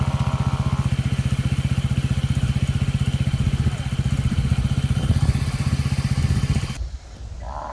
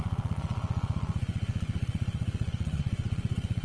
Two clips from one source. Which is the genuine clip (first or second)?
first